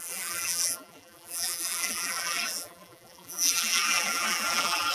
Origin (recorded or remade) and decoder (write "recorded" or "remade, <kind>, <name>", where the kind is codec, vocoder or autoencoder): remade, vocoder, BigVGAN v2